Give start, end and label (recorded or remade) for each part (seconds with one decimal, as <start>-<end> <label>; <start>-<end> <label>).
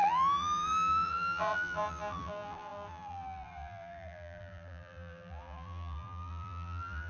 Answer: 0.0-7.1 remade